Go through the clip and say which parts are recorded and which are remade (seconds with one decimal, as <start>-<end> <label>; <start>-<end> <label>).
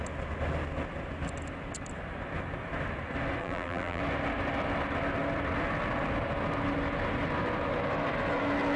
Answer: 0.0-3.4 recorded; 3.4-4.0 remade; 4.0-8.8 recorded